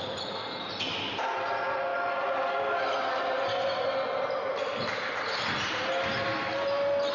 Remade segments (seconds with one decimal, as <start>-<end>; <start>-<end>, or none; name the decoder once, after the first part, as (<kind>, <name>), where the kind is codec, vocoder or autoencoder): none